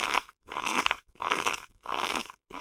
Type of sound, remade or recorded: remade